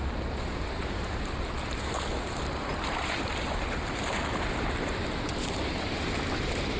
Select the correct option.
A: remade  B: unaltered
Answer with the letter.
A